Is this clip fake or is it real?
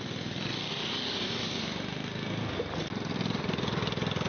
real